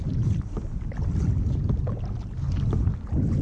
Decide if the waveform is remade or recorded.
recorded